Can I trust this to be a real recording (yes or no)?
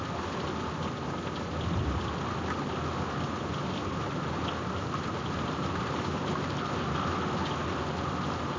yes